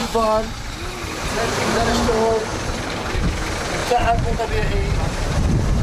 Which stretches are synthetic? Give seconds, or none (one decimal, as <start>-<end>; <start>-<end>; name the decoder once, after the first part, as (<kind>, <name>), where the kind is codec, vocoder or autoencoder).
2.5-3.1 (vocoder, BigVGAN v2); 3.8-4.4